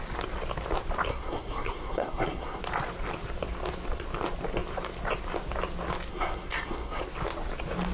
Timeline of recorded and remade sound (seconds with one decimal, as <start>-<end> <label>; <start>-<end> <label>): 0.0-1.1 recorded; 1.1-2.6 remade; 2.6-6.1 recorded; 6.1-7.0 remade; 7.0-7.9 recorded